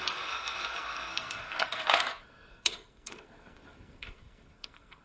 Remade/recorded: remade